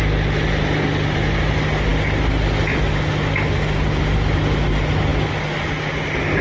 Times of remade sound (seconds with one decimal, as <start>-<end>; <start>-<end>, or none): none